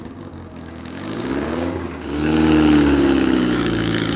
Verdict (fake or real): fake